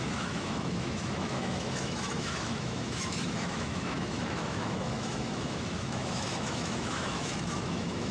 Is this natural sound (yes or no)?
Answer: no